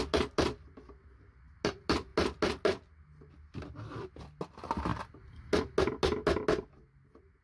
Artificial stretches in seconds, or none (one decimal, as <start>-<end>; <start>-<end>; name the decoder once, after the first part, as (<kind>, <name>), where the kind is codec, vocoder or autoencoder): none